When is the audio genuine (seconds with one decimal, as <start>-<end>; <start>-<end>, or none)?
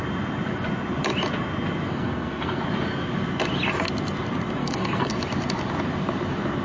0.0-1.9; 2.6-4.6; 5.1-6.6